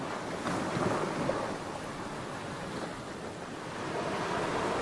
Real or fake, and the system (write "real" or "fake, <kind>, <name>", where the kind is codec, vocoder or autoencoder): real